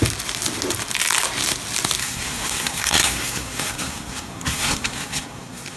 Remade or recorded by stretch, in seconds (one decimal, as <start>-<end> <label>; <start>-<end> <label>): 0.0-2.0 recorded; 2.0-5.8 remade